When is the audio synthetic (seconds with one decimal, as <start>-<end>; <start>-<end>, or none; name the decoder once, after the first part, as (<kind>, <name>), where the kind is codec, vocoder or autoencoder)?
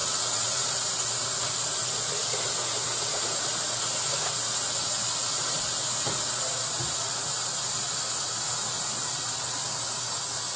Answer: 0.0-0.7 (vocoder, WaveNeXt)